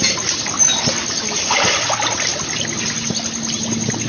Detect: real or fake real